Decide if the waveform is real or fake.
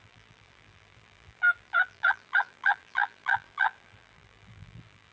fake